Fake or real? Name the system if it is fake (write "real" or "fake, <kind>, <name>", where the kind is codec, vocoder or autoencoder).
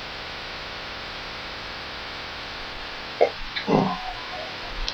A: fake, autoencoder, DAC-VAE